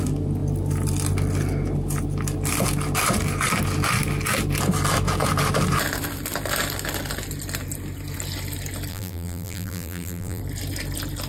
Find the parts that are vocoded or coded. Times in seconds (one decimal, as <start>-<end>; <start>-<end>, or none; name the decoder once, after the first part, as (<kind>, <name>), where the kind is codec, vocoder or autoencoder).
8.9-10.4 (vocoder, BigVGAN v2)